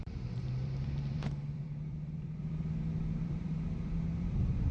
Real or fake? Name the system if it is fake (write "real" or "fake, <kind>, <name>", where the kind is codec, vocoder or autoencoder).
fake, vocoder, BigVGAN v2